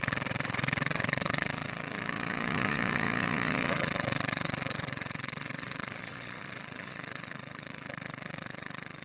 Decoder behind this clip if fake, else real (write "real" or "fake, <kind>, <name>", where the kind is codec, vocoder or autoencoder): fake, vocoder, Vocos